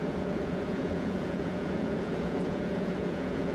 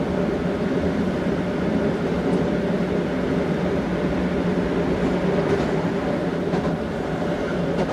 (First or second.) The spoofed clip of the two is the first